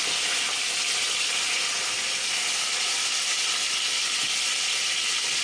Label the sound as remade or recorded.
recorded